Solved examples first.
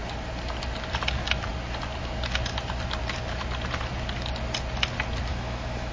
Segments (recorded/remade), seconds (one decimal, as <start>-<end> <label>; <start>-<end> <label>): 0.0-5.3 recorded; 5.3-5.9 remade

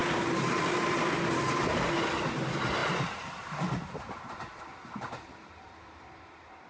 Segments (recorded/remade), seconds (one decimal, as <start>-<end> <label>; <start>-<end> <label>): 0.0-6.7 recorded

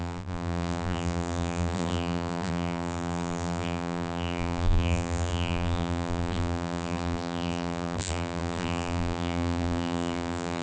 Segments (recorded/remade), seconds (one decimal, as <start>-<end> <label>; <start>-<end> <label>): 0.0-10.6 remade

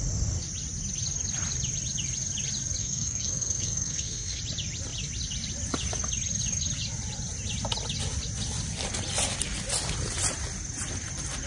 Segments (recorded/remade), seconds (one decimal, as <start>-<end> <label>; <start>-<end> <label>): 0.0-2.8 recorded; 2.8-4.4 remade; 4.4-11.5 recorded

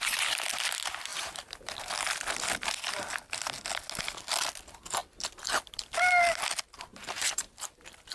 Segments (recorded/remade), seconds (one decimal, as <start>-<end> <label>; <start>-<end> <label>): 0.0-1.1 recorded; 1.1-1.7 remade; 1.7-6.9 recorded; 6.9-7.5 remade; 7.5-8.1 recorded

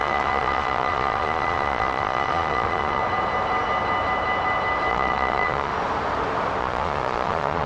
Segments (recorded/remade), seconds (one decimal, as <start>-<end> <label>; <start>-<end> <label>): 0.0-3.0 remade; 3.0-4.9 recorded; 4.9-5.7 remade; 5.7-6.6 recorded; 6.6-7.7 remade

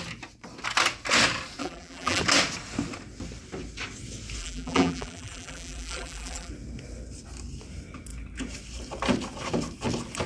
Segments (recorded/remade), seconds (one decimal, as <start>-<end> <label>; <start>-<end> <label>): 0.0-1.6 recorded; 1.6-2.2 remade; 2.2-4.4 recorded; 4.4-6.5 remade; 6.5-10.3 recorded

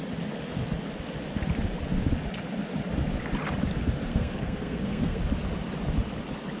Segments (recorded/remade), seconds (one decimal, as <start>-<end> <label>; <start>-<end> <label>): 0.0-4.1 recorded; 4.1-5.2 remade; 5.2-6.6 recorded